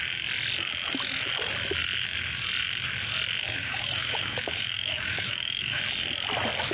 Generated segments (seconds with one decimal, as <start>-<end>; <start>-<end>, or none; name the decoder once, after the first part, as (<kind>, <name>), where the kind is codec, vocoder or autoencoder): 3.4-5.8 (autoencoder, DAC-VAE)